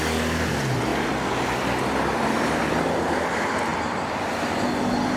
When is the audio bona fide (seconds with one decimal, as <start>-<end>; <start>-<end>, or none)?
0.0-0.9; 2.7-5.2